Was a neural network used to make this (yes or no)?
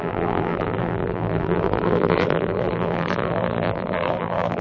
yes